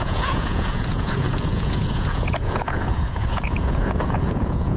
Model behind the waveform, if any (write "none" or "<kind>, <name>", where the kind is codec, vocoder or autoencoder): vocoder, Vocos